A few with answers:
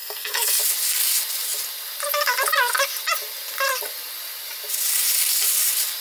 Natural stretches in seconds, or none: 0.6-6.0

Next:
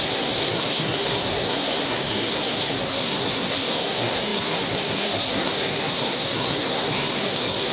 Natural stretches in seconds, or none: none

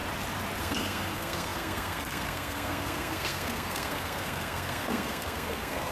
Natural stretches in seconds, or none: 0.0-0.6

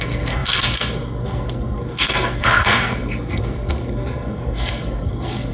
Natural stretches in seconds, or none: none